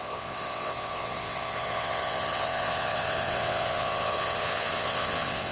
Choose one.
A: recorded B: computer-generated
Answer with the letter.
B